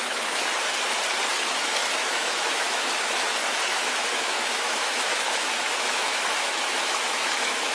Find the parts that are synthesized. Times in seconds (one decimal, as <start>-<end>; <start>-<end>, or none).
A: 0.0-0.5; 1.3-7.7